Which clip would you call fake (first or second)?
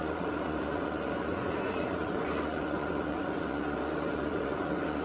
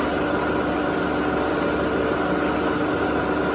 first